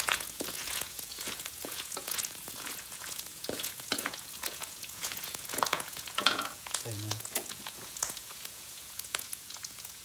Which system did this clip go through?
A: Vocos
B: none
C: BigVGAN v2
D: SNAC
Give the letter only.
A